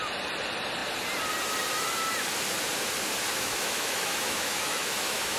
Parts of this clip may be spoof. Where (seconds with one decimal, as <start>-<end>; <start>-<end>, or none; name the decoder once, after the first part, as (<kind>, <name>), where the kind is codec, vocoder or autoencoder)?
3.3-5.4 (autoencoder, DAC-VAE)